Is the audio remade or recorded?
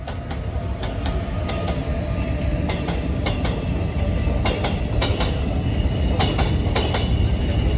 recorded